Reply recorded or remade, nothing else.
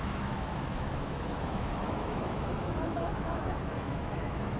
remade